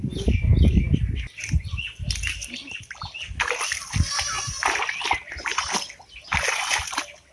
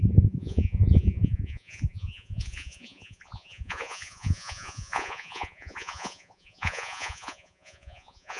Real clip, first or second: first